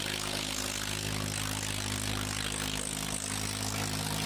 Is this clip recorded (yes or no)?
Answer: yes